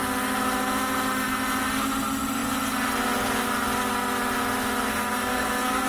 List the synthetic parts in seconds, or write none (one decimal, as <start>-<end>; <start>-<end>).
4.9-5.9